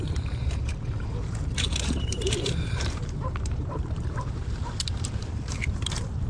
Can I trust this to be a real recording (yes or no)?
no